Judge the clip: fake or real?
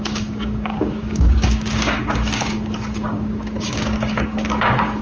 fake